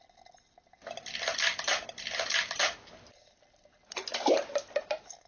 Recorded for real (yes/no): yes